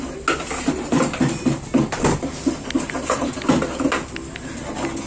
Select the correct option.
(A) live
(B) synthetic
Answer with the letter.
A